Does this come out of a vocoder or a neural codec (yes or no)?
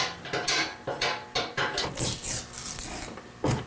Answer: no